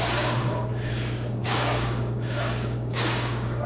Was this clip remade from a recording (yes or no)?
yes